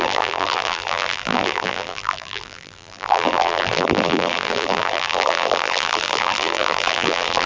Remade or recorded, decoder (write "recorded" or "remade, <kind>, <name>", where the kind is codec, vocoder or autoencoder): remade, vocoder, BigVGAN v2